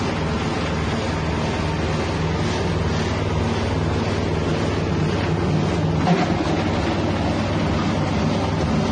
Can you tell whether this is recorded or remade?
recorded